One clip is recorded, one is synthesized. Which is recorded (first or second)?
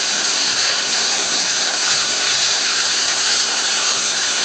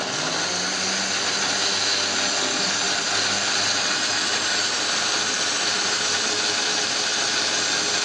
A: second